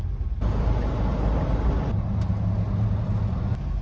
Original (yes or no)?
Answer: yes